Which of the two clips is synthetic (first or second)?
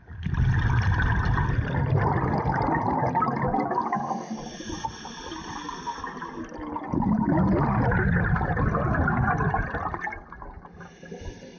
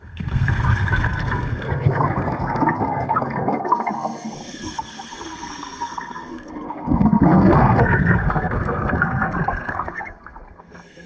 second